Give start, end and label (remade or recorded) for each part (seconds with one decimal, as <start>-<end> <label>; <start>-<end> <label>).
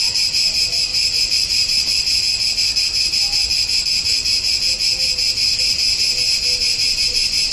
0.0-0.9 recorded; 0.9-2.2 remade; 2.2-7.5 recorded